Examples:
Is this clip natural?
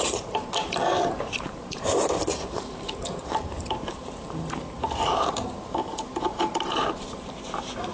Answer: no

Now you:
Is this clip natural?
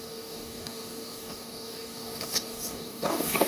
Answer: no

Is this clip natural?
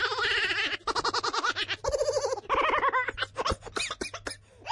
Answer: yes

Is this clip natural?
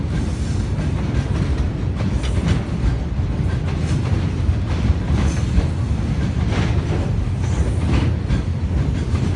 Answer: yes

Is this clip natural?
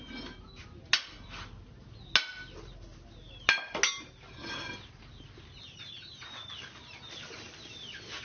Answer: yes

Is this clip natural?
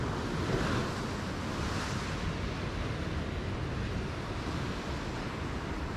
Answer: yes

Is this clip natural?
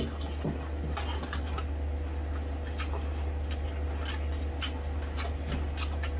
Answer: yes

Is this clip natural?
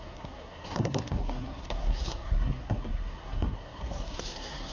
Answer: no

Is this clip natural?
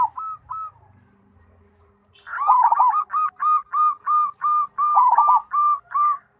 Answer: yes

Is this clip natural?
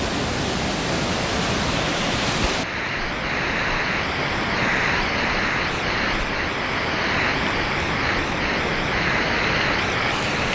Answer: yes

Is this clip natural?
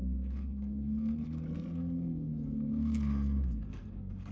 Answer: no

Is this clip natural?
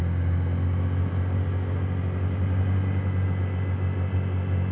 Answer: yes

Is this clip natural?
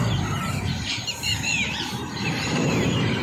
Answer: no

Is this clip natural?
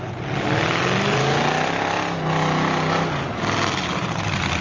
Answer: yes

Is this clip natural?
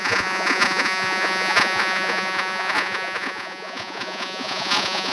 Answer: no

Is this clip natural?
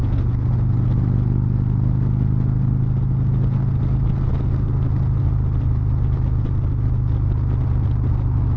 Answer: yes